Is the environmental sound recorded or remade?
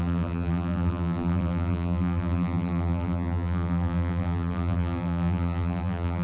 remade